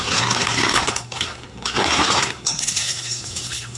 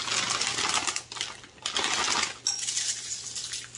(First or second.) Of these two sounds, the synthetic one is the first